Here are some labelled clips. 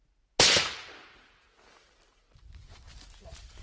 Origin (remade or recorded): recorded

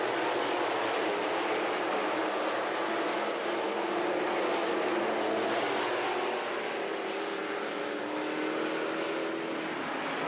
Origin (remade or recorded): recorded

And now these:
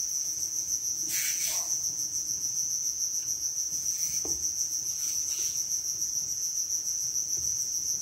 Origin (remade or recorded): remade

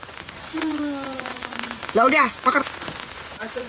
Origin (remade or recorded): remade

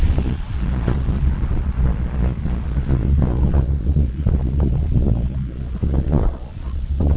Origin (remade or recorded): remade